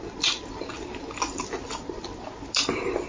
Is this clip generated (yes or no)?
no